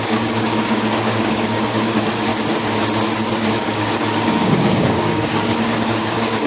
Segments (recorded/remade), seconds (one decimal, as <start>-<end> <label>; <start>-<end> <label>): 0.0-2.3 remade; 2.3-3.3 recorded; 3.3-6.5 remade